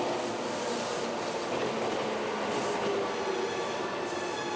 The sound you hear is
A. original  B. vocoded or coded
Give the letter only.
A